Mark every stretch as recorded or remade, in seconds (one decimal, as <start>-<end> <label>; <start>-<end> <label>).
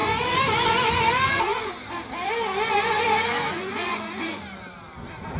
0.0-1.7 remade; 1.7-2.7 recorded; 2.7-4.4 remade; 4.4-5.4 recorded